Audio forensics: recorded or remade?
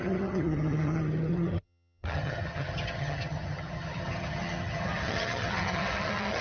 remade